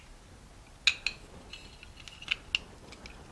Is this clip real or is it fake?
real